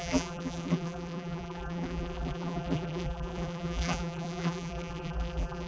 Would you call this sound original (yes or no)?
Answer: no